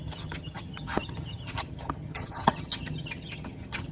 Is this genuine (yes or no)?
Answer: no